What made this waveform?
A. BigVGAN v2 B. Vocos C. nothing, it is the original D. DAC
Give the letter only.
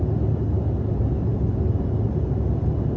C